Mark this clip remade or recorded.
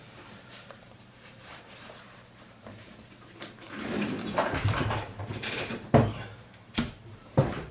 remade